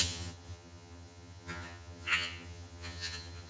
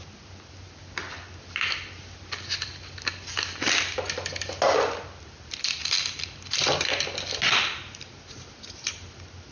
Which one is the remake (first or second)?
first